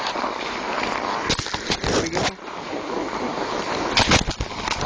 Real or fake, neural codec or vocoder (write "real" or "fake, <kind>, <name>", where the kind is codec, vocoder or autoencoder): real